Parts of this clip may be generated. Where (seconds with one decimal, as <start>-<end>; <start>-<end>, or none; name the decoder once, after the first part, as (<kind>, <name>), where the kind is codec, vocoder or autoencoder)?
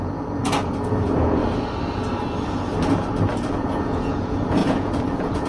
0.0-1.4 (vocoder, Vocos); 2.2-2.7; 3.5-5.5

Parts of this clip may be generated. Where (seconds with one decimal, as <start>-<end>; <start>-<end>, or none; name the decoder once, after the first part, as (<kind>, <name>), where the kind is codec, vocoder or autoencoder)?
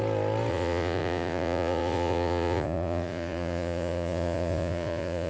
0.5-5.3 (vocoder, Vocos)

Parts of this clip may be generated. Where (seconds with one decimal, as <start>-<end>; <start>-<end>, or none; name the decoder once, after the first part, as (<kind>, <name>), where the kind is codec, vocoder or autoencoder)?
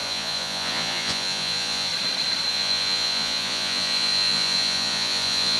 0.0-1.9 (vocoder, Vocos); 2.5-5.6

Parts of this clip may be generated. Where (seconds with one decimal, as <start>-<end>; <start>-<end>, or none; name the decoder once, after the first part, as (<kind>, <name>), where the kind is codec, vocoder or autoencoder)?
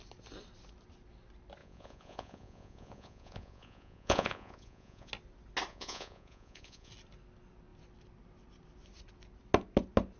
1.6-5.1 (vocoder, Vocos); 5.7-6.9